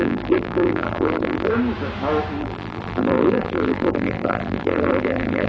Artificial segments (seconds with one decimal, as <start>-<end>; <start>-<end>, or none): 0.0-1.5; 2.4-5.5